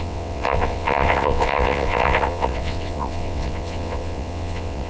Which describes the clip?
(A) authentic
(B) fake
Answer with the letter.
B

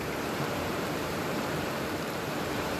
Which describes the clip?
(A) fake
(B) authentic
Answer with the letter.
A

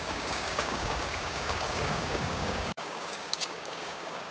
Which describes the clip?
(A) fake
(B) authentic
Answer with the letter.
A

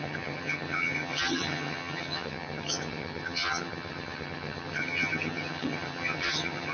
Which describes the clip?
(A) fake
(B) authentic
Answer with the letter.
A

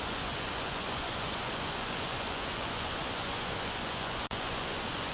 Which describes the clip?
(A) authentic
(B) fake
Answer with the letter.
B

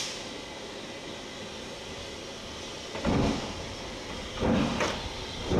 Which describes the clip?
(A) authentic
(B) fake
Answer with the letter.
A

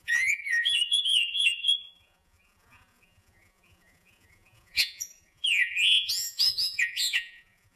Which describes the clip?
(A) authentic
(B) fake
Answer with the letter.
B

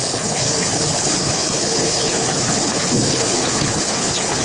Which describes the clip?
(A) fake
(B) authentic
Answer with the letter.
A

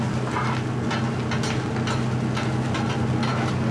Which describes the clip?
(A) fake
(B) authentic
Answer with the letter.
B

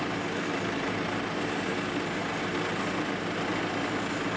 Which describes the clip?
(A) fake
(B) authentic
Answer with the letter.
B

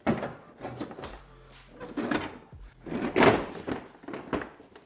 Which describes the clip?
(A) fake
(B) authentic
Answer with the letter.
B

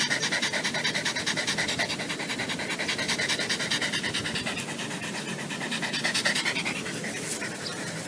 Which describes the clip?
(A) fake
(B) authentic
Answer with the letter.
B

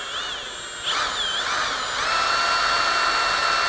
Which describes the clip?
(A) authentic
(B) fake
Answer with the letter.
A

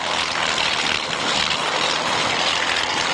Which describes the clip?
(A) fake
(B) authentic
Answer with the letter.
B